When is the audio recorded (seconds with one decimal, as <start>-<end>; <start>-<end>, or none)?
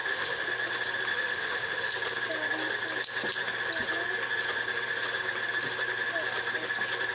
0.5-1.1; 1.9-7.1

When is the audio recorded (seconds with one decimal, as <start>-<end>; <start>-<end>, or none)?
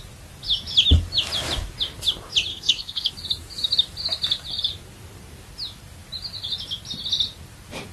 0.0-2.5; 3.1-7.9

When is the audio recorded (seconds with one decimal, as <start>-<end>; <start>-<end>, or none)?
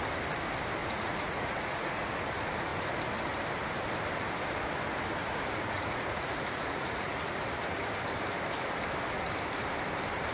0.0-0.8; 2.1-5.2; 7.5-10.3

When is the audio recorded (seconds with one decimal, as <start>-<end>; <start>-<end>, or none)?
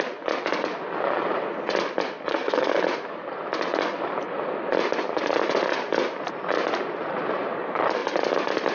0.0-2.3; 2.8-8.7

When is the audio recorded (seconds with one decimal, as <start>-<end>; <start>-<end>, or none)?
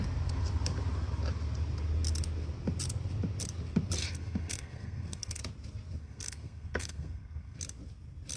0.0-4.0; 5.4-6.0; 7.6-8.4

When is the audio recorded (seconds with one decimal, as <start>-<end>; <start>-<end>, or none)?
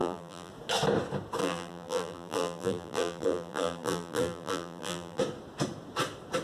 0.5-1.4; 5.2-6.4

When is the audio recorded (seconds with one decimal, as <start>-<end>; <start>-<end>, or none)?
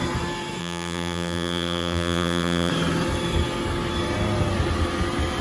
0.0-0.6; 2.7-5.4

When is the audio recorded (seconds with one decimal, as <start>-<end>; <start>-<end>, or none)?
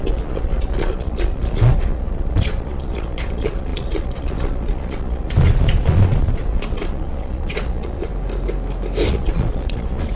8.1-9.1